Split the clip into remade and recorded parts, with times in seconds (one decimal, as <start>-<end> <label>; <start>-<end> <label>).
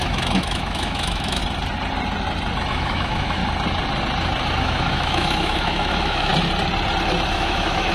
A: 0.0-1.4 remade; 1.4-2.7 recorded; 2.7-3.4 remade; 3.4-4.6 recorded; 4.6-6.3 remade; 6.3-7.3 recorded; 7.3-7.9 remade